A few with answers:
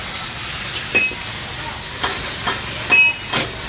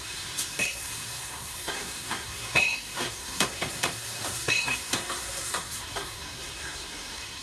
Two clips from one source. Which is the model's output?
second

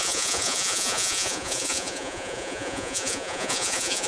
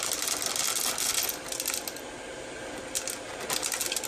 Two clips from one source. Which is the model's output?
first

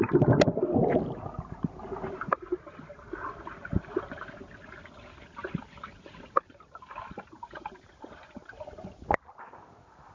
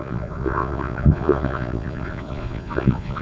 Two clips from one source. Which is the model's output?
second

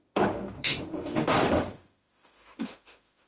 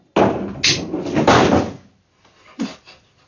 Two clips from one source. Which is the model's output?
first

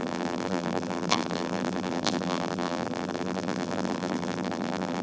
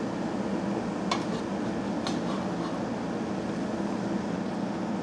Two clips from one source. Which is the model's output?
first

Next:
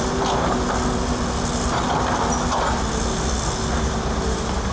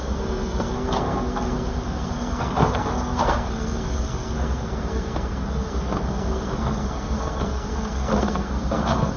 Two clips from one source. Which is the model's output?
second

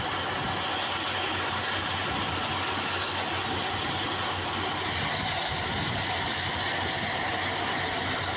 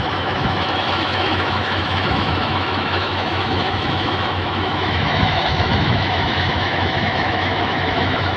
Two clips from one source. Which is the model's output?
second